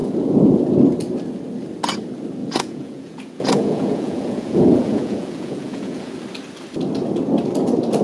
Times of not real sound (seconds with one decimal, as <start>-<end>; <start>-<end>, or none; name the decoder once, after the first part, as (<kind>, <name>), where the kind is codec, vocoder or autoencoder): 0.0-0.6 (vocoder, Vocos); 2.4-6.1